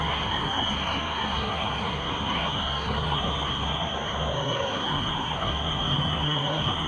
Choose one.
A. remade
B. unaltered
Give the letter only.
A